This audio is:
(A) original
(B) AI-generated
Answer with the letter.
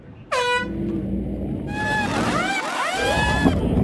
A